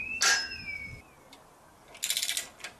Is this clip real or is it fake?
real